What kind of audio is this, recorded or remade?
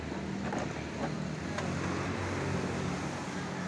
recorded